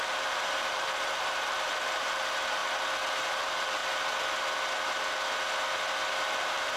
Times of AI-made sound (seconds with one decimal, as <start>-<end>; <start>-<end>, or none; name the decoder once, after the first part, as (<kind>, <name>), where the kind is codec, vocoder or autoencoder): 0.0-2.6 (vocoder, BigVGAN v2); 3.2-3.8; 6.3-6.8